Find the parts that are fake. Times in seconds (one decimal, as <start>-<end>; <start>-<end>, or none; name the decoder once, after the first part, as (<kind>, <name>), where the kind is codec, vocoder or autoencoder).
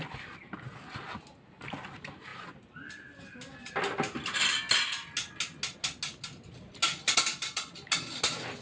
none